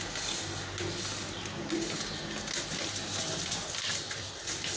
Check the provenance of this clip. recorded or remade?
recorded